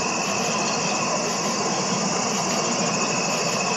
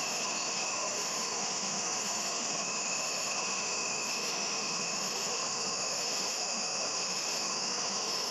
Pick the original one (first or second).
first